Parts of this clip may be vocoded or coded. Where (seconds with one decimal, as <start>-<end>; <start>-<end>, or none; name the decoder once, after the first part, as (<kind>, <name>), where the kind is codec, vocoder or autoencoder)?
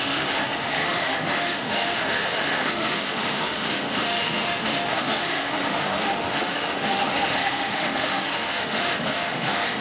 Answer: 0.0-9.8 (autoencoder, DAC-VAE)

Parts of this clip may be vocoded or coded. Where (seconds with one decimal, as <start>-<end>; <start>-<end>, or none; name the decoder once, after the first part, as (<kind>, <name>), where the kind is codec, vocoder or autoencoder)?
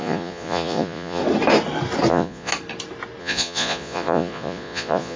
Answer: 0.0-1.2 (vocoder, Vocos); 2.1-2.5; 3.2-5.2